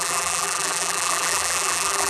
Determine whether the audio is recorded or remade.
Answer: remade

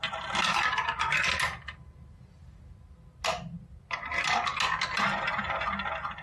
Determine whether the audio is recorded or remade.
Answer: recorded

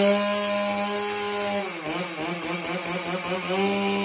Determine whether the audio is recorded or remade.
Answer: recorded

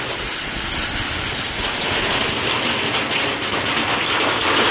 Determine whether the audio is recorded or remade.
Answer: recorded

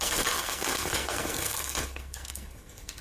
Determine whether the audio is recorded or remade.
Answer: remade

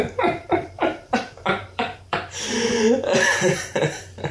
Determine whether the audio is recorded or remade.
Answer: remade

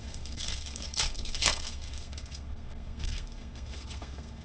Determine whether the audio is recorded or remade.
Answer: remade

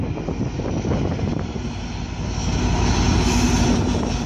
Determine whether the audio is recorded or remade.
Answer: recorded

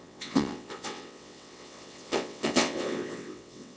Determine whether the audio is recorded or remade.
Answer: remade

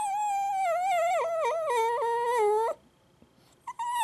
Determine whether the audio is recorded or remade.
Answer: recorded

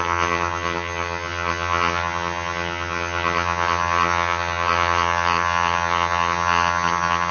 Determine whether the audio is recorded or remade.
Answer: remade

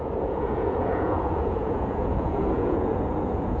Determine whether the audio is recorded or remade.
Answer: remade